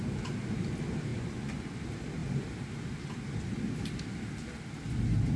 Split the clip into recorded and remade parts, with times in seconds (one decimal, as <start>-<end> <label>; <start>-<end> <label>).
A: 0.0-1.1 recorded; 1.1-1.8 remade; 1.8-5.4 recorded